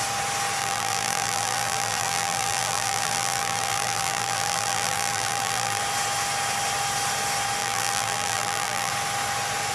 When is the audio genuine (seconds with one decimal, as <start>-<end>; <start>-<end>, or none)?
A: 0.0-0.6; 5.8-7.6; 8.9-9.7